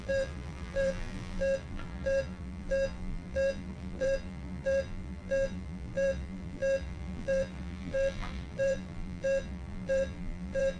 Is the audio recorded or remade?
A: remade